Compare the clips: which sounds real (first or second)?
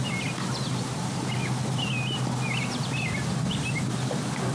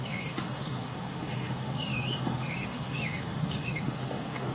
first